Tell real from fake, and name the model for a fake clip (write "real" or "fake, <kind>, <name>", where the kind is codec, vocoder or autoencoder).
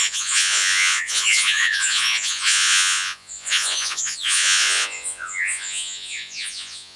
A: fake, vocoder, Vocos